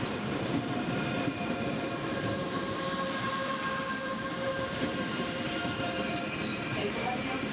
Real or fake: fake